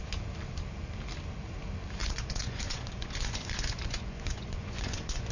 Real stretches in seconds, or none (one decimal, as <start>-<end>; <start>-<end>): 0.0-2.0